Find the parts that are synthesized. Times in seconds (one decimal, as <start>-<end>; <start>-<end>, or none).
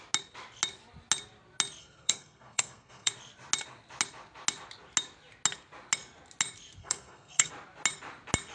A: 1.8-3.1; 6.8-7.5